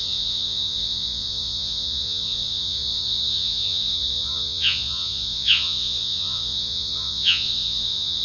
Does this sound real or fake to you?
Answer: fake